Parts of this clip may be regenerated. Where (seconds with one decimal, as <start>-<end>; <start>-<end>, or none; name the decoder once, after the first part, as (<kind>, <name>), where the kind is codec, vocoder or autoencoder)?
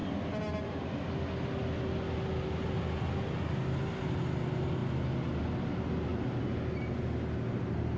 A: none